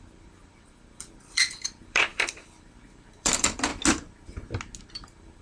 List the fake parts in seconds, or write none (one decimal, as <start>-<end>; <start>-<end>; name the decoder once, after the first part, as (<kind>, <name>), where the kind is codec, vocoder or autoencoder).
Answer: 0.0-3.7 (vocoder, BigVGAN v2); 4.8-5.4